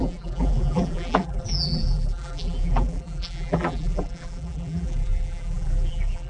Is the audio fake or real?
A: fake